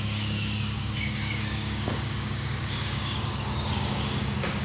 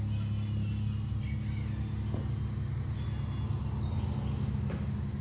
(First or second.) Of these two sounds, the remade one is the first